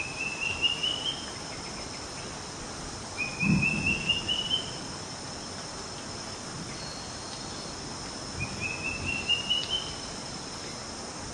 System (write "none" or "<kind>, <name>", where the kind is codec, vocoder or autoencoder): none